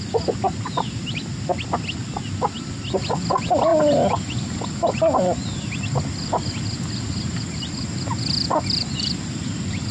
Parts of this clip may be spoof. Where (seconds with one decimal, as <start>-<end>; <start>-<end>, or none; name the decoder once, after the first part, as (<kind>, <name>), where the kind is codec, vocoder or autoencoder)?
none